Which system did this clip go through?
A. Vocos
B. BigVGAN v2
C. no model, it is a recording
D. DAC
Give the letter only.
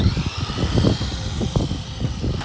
C